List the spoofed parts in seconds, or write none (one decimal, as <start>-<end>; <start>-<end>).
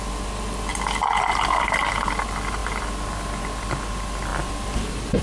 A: 0.7-2.1; 2.6-3.4; 4.3-5.2